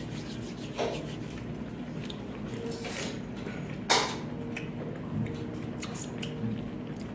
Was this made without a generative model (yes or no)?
yes